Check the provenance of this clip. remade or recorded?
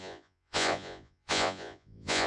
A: remade